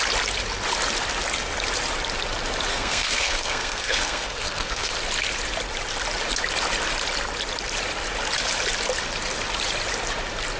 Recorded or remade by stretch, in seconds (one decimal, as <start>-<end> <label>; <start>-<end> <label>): 0.0-2.7 recorded; 2.7-4.9 remade; 4.9-10.6 recorded